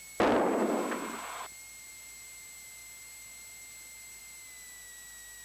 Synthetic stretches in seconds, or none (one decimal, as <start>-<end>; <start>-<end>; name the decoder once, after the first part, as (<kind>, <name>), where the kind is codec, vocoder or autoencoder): none